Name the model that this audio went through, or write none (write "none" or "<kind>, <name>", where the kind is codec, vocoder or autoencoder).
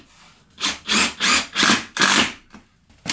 none